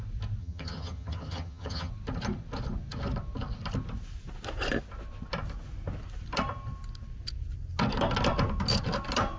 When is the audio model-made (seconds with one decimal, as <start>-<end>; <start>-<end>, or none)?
0.4-1.9